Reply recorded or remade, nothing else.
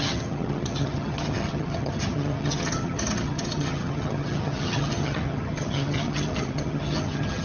remade